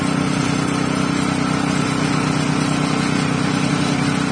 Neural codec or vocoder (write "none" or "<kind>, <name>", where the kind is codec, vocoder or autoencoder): none